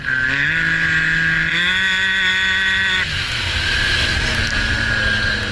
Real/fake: real